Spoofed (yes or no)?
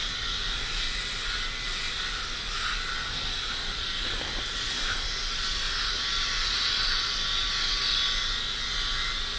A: no